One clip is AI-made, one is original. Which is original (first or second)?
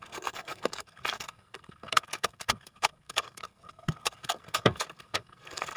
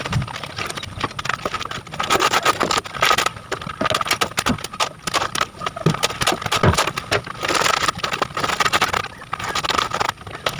second